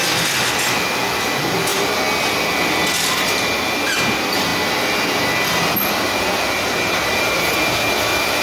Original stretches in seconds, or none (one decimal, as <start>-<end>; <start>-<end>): 0.0-8.4